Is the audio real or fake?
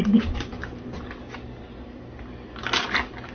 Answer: real